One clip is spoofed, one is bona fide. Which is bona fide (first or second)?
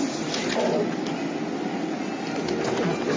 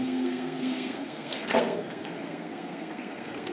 first